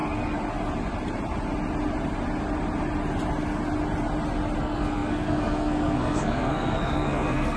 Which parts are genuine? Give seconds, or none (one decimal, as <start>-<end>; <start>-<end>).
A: 0.0-4.6